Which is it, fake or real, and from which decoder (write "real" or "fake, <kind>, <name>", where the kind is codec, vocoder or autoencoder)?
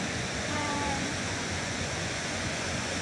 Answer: fake, vocoder, Vocos